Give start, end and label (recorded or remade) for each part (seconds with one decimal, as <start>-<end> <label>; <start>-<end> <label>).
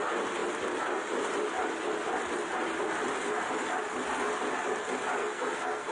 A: 0.0-5.2 recorded; 5.2-5.9 remade